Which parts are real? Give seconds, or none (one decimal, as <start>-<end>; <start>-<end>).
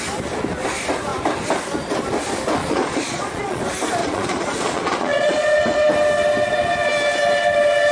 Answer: 0.0-2.6; 3.6-4.0; 5.9-7.9